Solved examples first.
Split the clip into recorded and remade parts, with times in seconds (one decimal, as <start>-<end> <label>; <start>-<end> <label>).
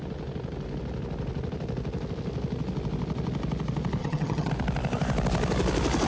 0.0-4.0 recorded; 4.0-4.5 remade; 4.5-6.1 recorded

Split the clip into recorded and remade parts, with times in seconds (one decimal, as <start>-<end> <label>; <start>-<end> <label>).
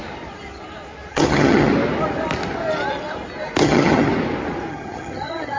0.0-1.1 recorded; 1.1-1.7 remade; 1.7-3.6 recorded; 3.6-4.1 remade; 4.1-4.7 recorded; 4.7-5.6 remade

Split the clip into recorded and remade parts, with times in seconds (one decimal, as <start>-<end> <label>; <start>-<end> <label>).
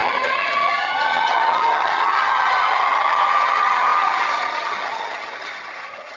0.0-6.2 remade